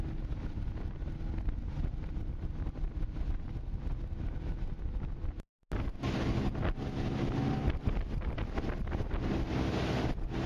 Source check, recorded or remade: recorded